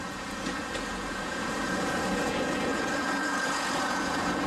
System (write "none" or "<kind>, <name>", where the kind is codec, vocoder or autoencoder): vocoder, Vocos